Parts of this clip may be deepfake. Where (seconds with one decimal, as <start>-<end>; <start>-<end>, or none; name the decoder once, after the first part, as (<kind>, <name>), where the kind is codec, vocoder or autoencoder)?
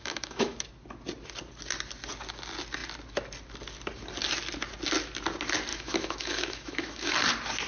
0.0-0.7 (autoencoder, DAC-VAE); 5.7-7.1